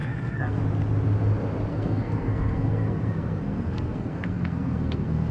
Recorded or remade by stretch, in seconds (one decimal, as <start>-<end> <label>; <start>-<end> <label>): 0.0-0.6 remade; 0.6-1.7 recorded; 1.7-5.3 remade